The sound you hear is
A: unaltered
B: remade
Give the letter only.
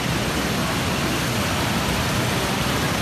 A